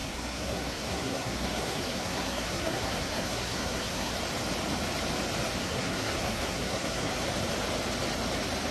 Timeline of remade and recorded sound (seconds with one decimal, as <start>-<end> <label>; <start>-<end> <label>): 0.0-4.1 remade; 4.1-5.6 recorded; 5.6-7.1 remade; 7.1-8.7 recorded